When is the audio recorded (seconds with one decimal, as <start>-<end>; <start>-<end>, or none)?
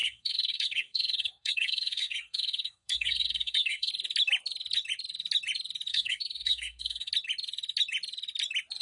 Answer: 3.9-5.9; 7.1-8.8